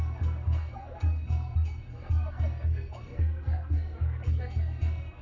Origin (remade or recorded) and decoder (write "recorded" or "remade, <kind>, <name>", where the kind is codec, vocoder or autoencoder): remade, codec, SNAC